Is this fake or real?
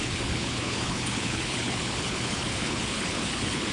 fake